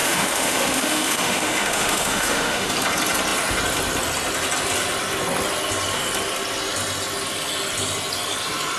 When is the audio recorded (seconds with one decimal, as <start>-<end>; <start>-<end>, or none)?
2.7-8.8